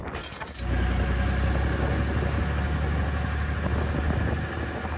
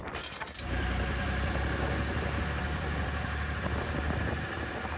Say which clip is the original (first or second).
first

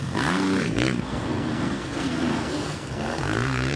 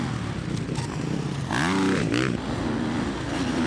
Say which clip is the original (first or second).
second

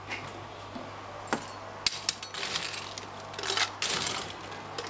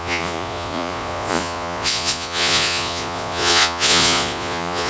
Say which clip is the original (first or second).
first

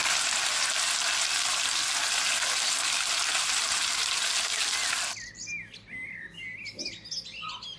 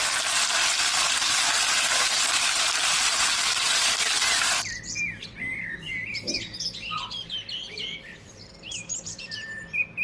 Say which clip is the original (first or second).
first